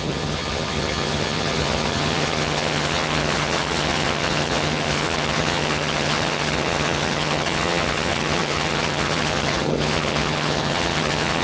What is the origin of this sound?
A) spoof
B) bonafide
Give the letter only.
A